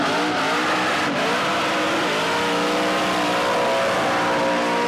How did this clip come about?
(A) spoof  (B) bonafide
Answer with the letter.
B